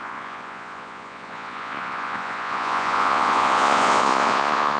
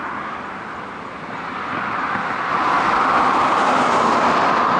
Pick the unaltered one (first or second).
second